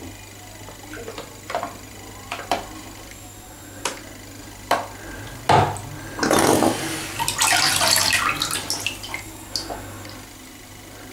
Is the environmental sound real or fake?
real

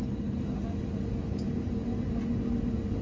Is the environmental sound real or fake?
real